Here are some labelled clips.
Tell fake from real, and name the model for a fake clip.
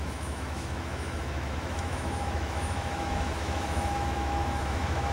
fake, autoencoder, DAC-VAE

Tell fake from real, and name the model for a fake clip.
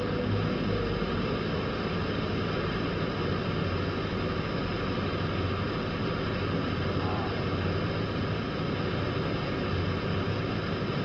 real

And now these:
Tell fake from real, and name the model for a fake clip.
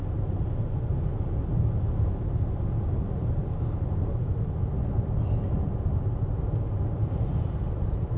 real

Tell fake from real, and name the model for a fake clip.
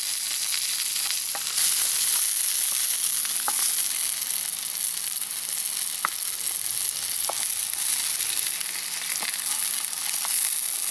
real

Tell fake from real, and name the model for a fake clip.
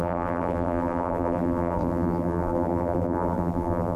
fake, vocoder, BigVGAN v2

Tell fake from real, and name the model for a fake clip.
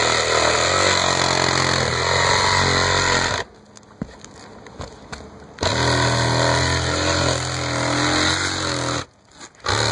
real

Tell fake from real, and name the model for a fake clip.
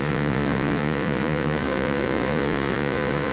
fake, vocoder, Vocos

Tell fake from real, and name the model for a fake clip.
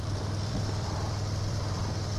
fake, vocoder, BigVGAN v2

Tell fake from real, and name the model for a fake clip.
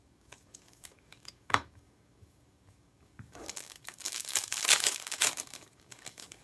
fake, codec, DAC